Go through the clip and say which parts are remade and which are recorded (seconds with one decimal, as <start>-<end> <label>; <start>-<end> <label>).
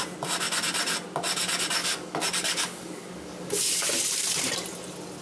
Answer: 0.0-1.8 recorded; 1.8-3.9 remade; 3.9-5.2 recorded